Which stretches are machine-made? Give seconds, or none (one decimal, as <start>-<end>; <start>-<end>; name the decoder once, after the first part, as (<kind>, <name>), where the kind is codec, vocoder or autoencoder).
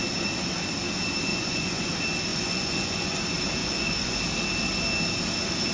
1.3-1.9 (vocoder, Vocos); 2.3-3.2; 3.6-4.2